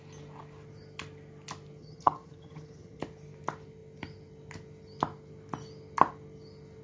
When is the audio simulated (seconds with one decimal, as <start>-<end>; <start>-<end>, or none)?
1.8-3.0